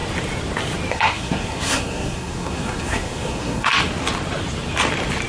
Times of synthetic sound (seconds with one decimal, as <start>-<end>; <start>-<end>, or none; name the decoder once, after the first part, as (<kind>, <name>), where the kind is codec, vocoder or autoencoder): 0.9-3.7 (codec, SNAC)